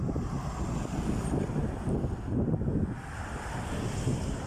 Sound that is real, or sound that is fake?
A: real